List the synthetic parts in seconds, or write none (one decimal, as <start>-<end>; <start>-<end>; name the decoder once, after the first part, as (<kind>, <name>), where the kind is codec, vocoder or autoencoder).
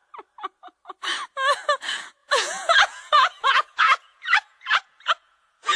2.2-5.8 (vocoder, Vocos)